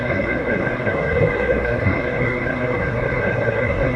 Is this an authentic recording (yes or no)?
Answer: no